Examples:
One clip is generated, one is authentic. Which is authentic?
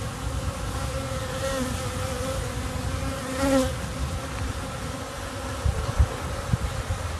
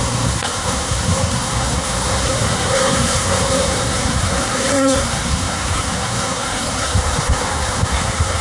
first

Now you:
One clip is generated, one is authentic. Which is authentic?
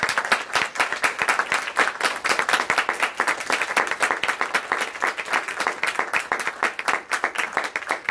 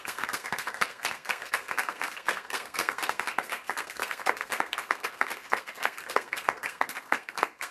first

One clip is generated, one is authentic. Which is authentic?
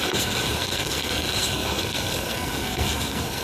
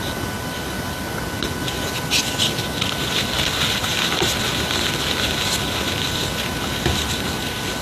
second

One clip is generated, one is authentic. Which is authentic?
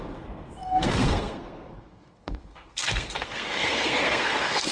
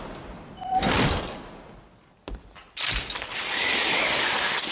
second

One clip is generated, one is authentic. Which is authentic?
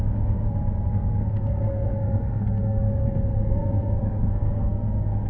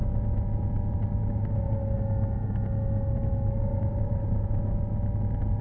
second